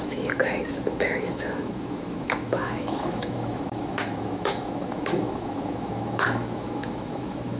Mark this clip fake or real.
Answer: fake